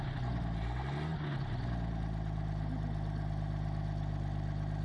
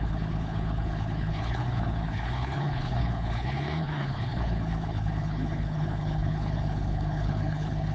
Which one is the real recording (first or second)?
first